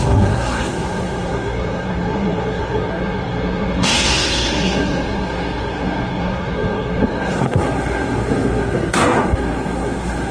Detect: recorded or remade remade